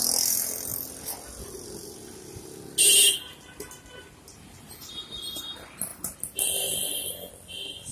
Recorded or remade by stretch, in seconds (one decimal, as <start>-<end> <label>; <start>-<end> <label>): 0.0-7.9 recorded